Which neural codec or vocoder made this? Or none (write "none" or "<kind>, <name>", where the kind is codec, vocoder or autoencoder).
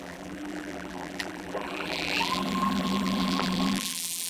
vocoder, BigVGAN v2